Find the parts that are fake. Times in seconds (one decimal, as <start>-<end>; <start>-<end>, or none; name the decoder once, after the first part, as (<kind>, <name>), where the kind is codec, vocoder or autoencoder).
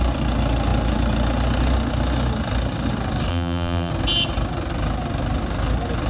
3.3-3.9 (vocoder, BigVGAN v2)